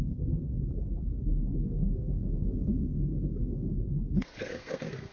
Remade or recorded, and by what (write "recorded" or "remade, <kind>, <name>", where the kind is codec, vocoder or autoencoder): remade, codec, SNAC